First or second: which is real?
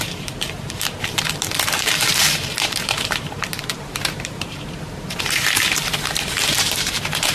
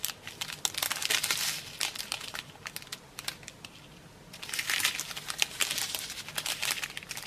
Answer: second